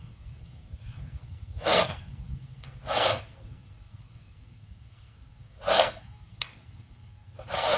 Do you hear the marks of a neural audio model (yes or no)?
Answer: yes